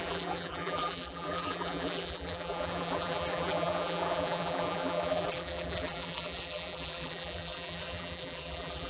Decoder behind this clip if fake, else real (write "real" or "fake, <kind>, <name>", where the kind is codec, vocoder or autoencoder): fake, vocoder, BigVGAN v2